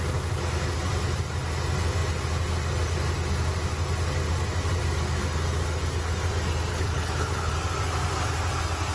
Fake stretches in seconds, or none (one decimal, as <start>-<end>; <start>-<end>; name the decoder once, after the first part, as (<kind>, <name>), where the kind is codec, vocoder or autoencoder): 6.7-7.5 (codec, HILCodec)